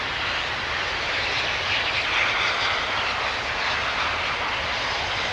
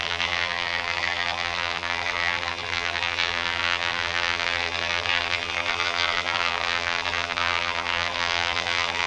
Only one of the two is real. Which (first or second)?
first